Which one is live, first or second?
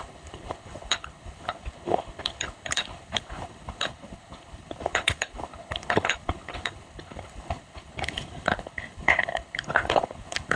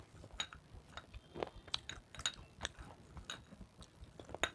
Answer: second